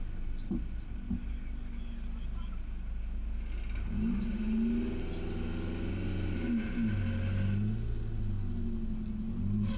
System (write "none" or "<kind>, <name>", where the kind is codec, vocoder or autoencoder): none